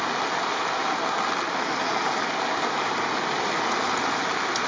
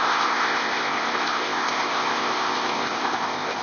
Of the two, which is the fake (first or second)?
second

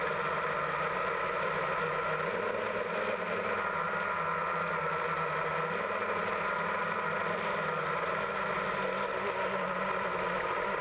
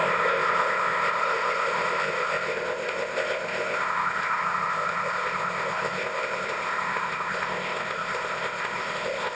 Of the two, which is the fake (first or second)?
second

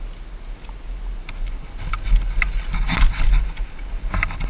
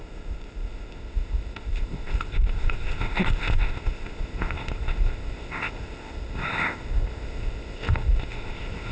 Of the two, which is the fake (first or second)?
second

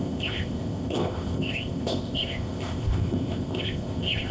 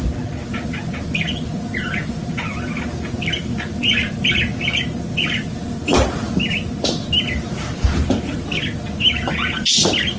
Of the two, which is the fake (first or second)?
first